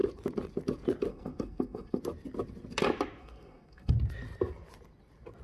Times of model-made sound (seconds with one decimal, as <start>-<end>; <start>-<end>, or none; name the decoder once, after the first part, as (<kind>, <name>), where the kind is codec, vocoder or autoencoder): 1.1-2.0 (codec, SNAC); 3.2-3.9